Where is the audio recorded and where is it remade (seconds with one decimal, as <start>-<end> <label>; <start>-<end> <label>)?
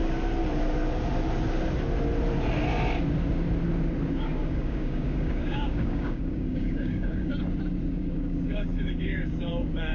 0.0-4.1 recorded; 4.1-7.3 remade; 7.3-7.9 recorded; 7.9-9.9 remade